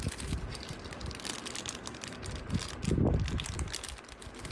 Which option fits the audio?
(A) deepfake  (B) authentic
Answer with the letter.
B